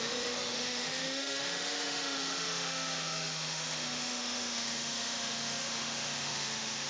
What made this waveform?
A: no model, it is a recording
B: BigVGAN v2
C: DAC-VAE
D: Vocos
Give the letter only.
C